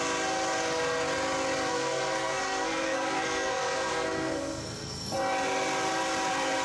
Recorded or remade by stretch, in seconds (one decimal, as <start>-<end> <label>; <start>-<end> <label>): 0.0-1.7 recorded; 1.7-5.2 remade; 5.2-6.6 recorded